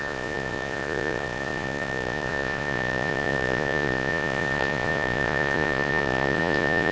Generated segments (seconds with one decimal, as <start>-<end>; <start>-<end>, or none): 0.0-6.9